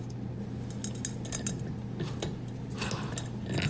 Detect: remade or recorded recorded